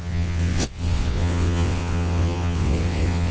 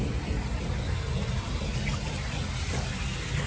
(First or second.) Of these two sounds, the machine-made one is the first